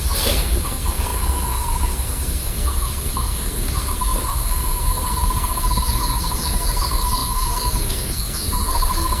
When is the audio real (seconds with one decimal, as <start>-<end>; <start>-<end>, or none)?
none